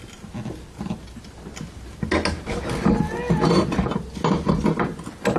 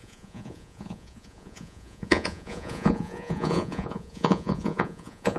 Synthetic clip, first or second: second